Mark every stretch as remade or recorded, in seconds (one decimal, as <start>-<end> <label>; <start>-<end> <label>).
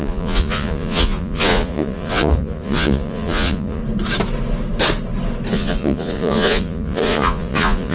0.0-3.8 remade; 3.8-5.5 recorded; 5.5-7.9 remade